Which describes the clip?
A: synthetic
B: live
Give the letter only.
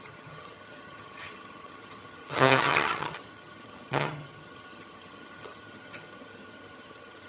A